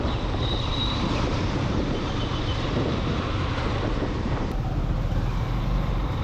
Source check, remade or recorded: remade